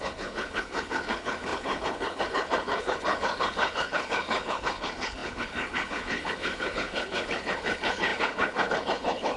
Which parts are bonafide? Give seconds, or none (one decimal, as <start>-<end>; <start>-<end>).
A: none